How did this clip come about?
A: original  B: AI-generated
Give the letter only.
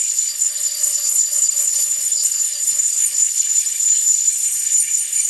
B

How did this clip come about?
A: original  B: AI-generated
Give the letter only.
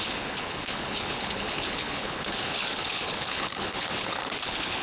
B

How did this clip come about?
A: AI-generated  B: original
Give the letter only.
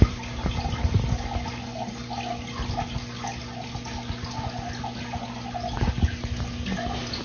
B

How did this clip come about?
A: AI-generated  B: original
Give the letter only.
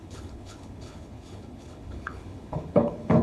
A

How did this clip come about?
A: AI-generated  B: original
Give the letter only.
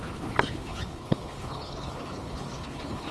A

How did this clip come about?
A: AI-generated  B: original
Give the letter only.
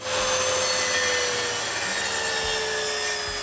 B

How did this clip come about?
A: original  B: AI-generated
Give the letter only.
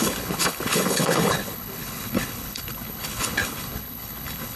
B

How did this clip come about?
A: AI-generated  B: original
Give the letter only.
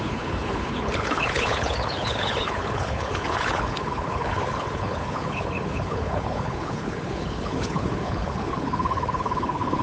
A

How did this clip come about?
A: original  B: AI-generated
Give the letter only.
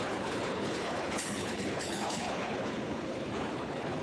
B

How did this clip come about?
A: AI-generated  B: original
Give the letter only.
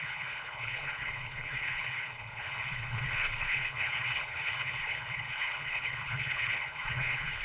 A